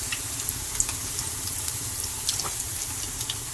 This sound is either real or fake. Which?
fake